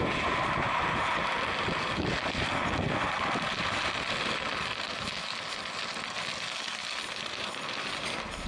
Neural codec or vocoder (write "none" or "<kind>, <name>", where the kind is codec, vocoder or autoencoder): none